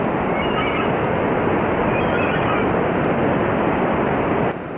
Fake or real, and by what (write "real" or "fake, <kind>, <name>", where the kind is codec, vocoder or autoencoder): real